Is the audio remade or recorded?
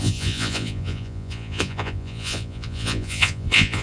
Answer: remade